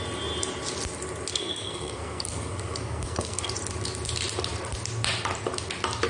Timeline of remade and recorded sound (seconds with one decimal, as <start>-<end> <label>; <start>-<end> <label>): 0.0-1.3 recorded; 1.3-3.5 remade; 3.5-6.1 recorded